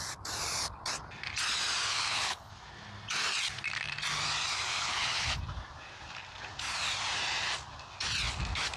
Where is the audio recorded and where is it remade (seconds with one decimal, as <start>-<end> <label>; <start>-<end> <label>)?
0.0-1.9 recorded; 1.9-2.5 remade; 2.5-4.7 recorded; 4.7-5.4 remade; 5.4-8.8 recorded